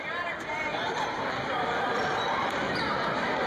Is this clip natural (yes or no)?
no